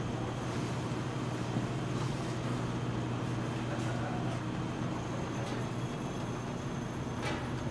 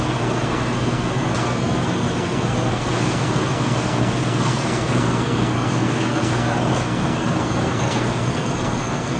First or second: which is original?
first